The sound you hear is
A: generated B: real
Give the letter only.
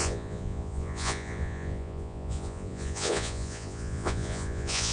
A